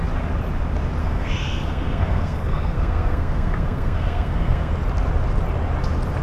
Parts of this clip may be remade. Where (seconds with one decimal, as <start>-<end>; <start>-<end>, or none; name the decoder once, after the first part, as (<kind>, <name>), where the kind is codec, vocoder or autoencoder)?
1.0-4.7 (codec, SNAC)